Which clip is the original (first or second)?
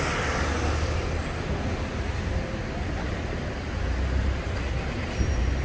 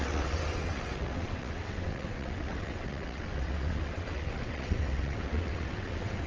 first